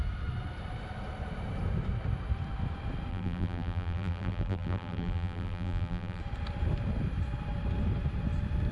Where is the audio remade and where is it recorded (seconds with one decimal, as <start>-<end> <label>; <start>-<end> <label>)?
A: 0.0-3.1 recorded; 3.1-6.2 remade; 6.2-8.7 recorded